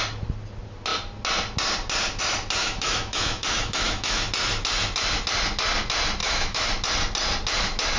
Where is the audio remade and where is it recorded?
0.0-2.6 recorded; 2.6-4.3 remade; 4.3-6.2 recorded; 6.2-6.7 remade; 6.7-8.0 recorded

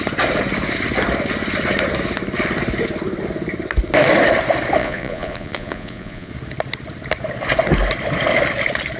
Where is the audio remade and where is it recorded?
0.0-4.8 recorded; 4.8-6.3 remade; 6.3-9.0 recorded

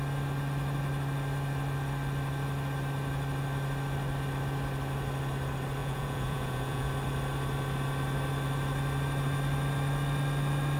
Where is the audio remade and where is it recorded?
0.0-5.8 recorded; 5.8-6.9 remade; 6.9-10.8 recorded

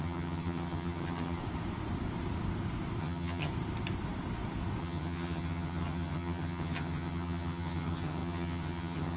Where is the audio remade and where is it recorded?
0.0-1.4 remade; 1.4-3.0 recorded; 3.0-3.5 remade; 3.5-4.8 recorded; 4.8-9.2 remade